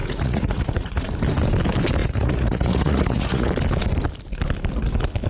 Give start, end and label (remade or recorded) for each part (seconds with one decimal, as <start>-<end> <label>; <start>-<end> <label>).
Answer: 0.0-1.1 remade; 1.1-2.0 recorded; 2.0-3.5 remade; 3.5-5.3 recorded